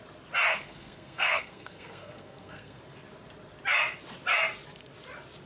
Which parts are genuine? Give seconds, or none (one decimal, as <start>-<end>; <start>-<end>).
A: 0.0-0.5; 2.8-5.5